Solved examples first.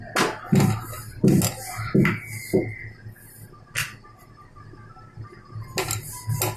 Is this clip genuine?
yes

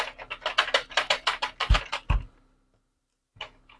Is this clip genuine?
yes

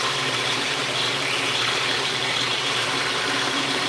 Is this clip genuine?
no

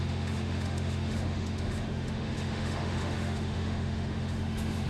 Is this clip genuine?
no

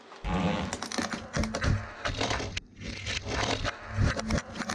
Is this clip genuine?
yes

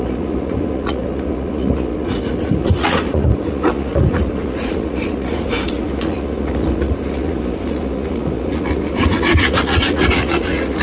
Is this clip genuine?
no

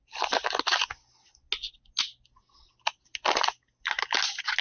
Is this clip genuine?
yes